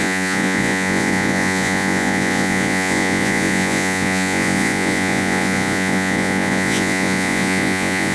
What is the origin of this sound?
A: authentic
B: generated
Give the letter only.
B